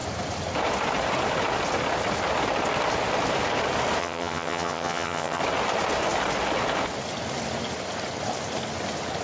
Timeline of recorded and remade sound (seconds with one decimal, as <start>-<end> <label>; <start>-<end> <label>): 0.0-4.0 recorded; 4.0-5.4 remade; 5.4-9.2 recorded